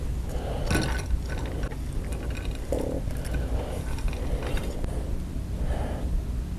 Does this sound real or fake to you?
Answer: real